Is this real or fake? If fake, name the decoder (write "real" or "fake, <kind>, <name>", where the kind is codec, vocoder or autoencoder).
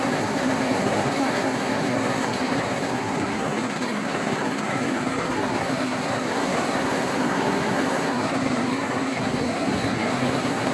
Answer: fake, codec, SNAC